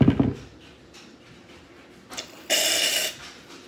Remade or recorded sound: recorded